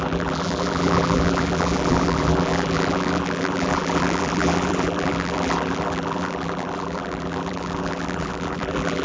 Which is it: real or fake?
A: fake